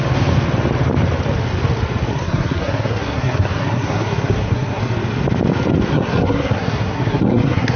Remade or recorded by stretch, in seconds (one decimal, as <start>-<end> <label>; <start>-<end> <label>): 0.0-2.1 recorded; 2.1-4.8 remade; 4.8-5.9 recorded; 5.9-7.8 remade

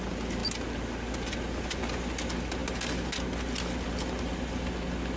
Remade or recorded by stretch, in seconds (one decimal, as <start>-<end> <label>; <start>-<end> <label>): 0.0-5.2 recorded

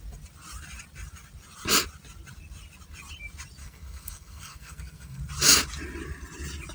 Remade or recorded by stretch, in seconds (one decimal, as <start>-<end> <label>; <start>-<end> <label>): 0.0-3.6 recorded; 3.6-5.2 remade; 5.2-6.7 recorded

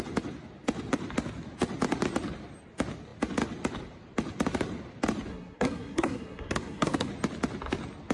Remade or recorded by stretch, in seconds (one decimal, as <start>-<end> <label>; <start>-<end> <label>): 0.0-5.3 recorded; 5.3-7.1 remade; 7.1-8.1 recorded

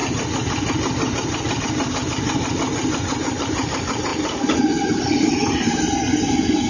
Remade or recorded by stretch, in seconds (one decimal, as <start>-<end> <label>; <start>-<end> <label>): 0.0-6.7 recorded